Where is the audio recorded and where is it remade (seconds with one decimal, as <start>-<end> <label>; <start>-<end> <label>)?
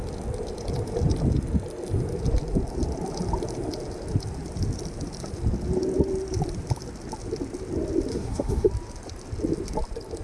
0.0-8.1 recorded; 8.1-8.7 remade; 8.7-10.2 recorded